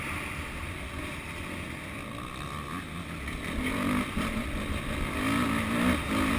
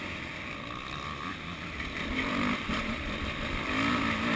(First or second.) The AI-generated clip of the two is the second